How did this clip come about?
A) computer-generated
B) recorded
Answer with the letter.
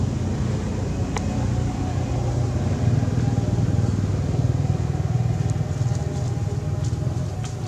B